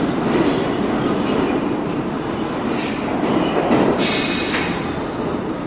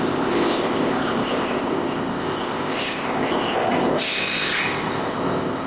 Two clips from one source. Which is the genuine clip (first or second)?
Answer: first